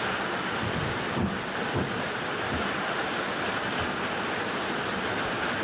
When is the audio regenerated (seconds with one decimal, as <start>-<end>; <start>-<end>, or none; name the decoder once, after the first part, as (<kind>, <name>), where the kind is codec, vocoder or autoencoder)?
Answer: none